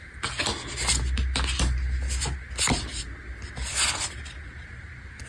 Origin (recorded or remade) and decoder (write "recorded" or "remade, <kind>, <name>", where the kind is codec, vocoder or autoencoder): recorded